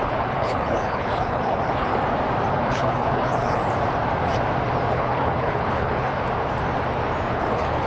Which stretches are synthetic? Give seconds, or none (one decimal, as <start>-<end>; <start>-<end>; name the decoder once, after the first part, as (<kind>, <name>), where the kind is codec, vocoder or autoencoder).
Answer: 0.0-1.9 (codec, HILCodec); 2.5-3.6; 4.9-6.1; 7.3-7.9